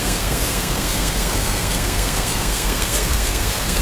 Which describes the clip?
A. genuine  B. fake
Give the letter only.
B